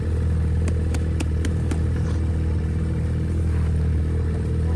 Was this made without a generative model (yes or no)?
yes